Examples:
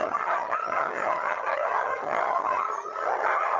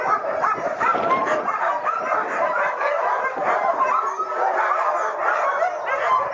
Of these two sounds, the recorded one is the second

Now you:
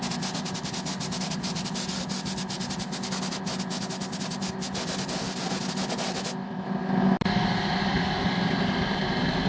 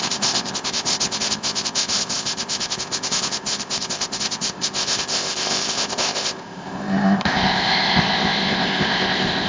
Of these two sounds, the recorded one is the first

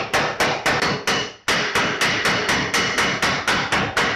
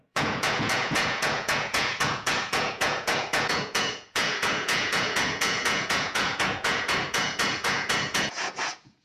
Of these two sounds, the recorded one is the first